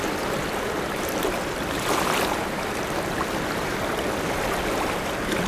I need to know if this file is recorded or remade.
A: recorded